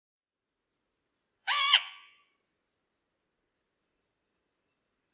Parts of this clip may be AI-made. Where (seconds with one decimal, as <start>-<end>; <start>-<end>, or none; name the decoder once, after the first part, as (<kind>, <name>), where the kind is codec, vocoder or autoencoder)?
1.4-2.3 (vocoder, Vocos)